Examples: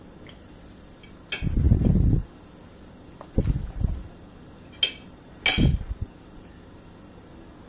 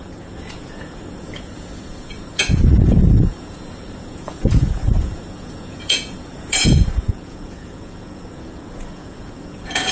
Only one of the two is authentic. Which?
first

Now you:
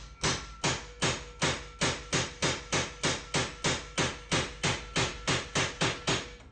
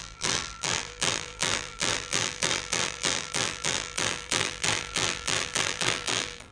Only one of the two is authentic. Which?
first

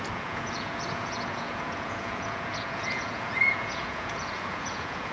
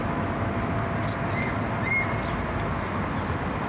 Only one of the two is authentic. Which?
second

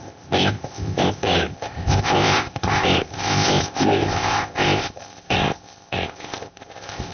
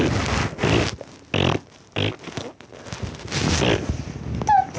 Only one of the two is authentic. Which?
second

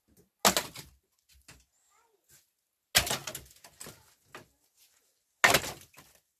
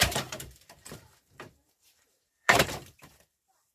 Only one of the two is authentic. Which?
first